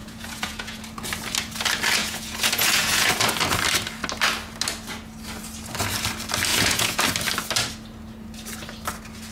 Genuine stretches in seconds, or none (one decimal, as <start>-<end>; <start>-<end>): 0.8-2.0; 3.1-6.5; 7.0-9.3